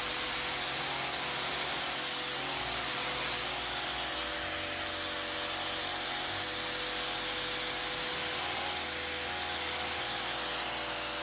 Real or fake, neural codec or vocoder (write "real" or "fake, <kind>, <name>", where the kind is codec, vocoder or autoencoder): real